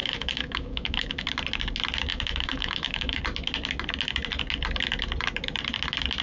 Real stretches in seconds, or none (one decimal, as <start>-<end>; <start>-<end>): 1.2-2.1; 3.2-6.2